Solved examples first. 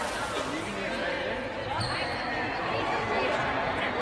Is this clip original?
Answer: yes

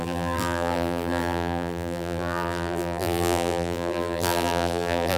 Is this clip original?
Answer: no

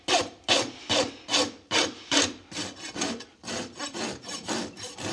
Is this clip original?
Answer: yes